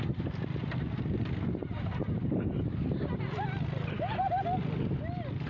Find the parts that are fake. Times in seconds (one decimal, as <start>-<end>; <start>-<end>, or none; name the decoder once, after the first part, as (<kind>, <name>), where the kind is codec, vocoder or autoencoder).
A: none